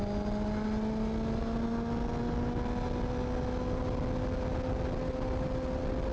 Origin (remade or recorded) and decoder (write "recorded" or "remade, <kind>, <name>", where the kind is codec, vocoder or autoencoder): recorded